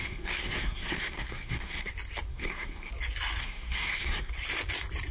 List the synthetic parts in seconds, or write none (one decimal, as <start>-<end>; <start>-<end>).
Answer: 0.0-1.9; 2.3-2.9; 3.4-4.3